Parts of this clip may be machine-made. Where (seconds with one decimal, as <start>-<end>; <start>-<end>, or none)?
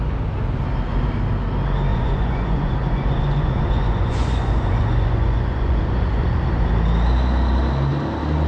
1.9-6.7